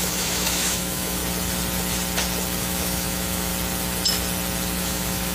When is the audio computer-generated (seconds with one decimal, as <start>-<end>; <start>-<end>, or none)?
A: 0.0-1.2; 2.6-3.5; 4.8-5.3